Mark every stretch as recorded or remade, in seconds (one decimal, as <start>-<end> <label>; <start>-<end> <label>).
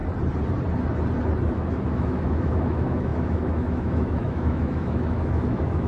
0.0-1.5 recorded; 1.5-5.9 remade